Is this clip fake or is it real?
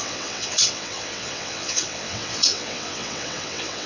fake